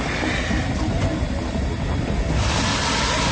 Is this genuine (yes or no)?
yes